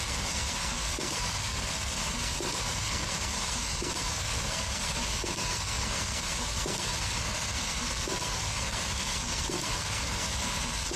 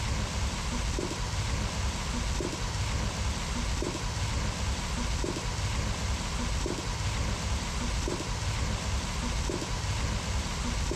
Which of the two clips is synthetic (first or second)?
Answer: first